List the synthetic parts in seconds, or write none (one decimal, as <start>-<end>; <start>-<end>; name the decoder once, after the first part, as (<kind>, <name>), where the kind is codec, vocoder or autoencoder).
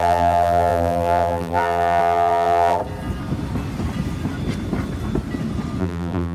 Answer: 0.0-2.8 (vocoder, BigVGAN v2); 5.8-6.3